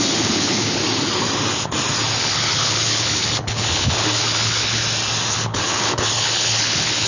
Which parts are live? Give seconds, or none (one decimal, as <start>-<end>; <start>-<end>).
0.8-2.2; 4.8-5.3